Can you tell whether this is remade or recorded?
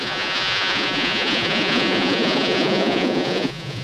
remade